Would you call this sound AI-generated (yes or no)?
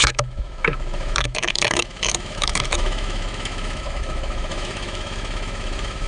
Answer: yes